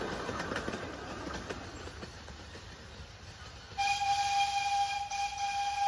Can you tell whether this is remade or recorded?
recorded